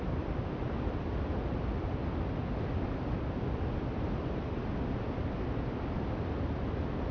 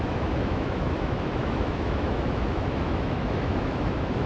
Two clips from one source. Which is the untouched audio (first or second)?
first